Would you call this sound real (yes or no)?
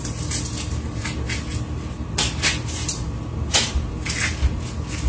yes